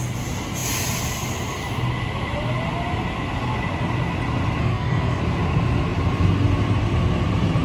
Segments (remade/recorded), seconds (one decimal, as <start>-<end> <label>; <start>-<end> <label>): 0.0-4.6 recorded; 4.6-5.2 remade; 5.2-7.6 recorded